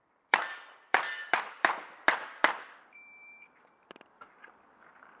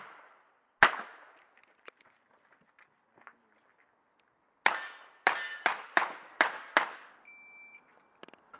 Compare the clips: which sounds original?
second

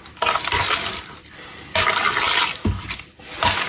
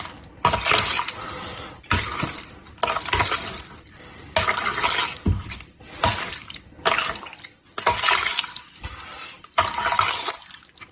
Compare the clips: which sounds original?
first